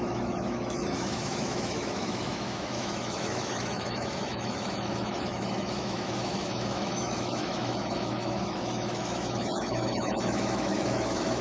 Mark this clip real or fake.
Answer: fake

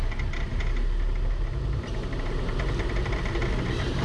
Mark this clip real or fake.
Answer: real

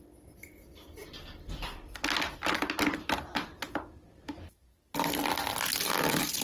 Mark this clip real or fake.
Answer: real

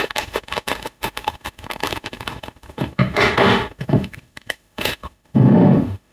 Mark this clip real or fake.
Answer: fake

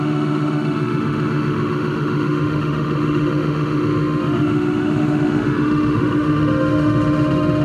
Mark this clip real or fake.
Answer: fake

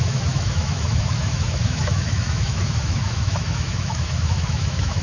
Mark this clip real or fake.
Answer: fake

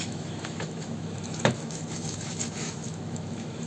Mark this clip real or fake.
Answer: fake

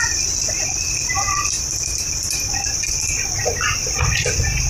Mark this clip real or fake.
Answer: real